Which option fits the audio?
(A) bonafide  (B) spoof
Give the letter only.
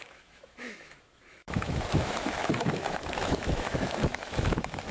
B